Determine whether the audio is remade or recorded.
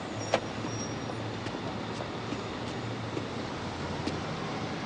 recorded